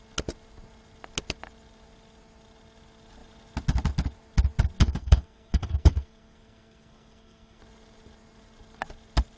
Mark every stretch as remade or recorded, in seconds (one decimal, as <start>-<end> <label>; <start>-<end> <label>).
0.0-4.8 recorded; 4.8-7.6 remade; 7.6-9.4 recorded